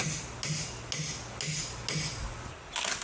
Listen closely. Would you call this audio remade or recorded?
recorded